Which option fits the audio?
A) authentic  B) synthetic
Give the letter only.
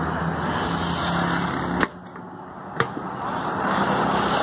A